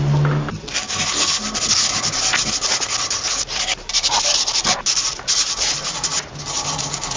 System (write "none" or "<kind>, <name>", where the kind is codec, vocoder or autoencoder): none